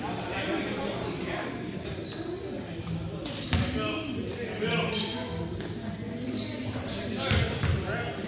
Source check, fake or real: real